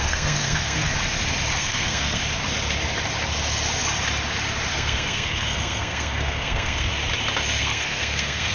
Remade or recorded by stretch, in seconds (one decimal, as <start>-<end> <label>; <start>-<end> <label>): 0.0-0.9 remade; 0.9-1.5 recorded; 1.5-2.2 remade; 2.2-4.7 recorded; 4.7-6.9 remade; 6.9-7.6 recorded; 7.6-8.5 remade